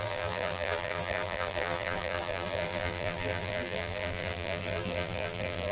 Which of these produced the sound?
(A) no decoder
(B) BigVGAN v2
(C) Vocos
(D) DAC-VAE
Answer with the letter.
B